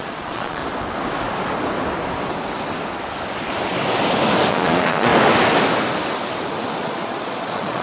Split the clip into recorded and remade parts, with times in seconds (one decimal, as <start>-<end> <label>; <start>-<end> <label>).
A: 0.0-0.6 remade; 0.6-4.5 recorded; 4.5-5.1 remade; 5.1-6.8 recorded; 6.8-7.8 remade